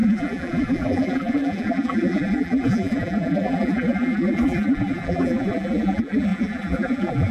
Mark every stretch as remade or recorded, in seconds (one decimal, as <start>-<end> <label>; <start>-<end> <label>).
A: 0.0-7.3 remade